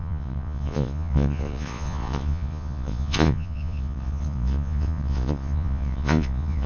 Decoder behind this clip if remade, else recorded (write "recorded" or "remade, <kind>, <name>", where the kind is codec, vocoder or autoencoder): remade, vocoder, Vocos